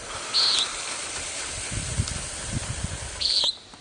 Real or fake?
real